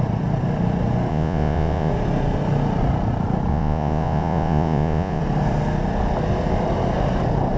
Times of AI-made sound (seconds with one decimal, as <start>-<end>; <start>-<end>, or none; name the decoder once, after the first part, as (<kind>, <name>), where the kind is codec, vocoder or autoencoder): 1.1-1.9 (vocoder, Vocos); 3.5-5.2